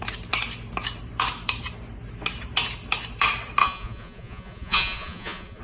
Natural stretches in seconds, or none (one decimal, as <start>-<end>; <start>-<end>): 0.0-3.6

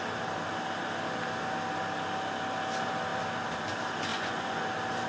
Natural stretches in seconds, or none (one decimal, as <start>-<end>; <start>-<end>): 0.0-4.1; 4.6-5.1

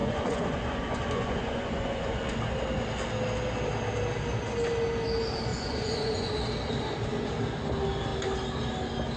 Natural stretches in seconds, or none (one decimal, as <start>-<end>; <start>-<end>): 2.4-5.5; 6.3-9.2

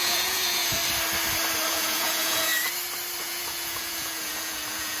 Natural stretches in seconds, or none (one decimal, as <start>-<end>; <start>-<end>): 0.8-1.7; 2.5-3.2

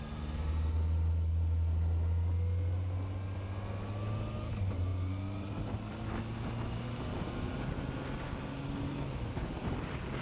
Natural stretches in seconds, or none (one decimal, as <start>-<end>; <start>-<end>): 0.0-10.2